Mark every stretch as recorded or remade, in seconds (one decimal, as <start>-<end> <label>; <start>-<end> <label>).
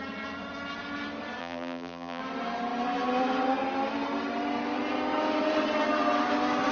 0.0-1.4 recorded; 1.4-2.2 remade; 2.2-6.7 recorded